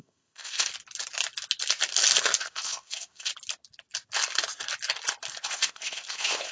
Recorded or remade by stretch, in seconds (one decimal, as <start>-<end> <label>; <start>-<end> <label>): 0.0-0.7 remade; 0.7-2.4 recorded; 2.4-3.3 remade; 3.3-5.4 recorded; 5.4-6.5 remade